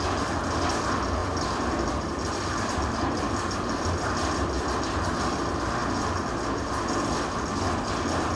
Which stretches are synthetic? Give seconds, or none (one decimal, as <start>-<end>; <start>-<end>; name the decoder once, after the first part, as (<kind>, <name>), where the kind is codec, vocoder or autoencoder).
1.2-5.2 (vocoder, BigVGAN v2)